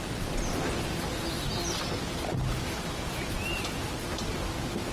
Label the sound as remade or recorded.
recorded